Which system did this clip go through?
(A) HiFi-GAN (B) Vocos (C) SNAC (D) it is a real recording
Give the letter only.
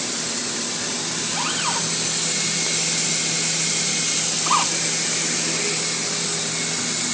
D